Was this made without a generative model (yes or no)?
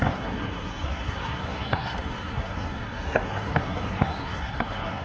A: no